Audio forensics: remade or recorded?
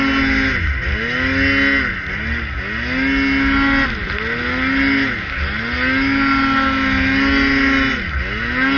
recorded